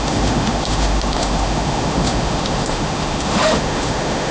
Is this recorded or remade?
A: remade